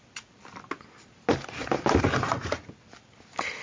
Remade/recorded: recorded